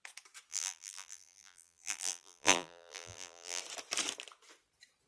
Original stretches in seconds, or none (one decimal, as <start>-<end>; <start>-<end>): 0.0-0.5; 3.6-5.1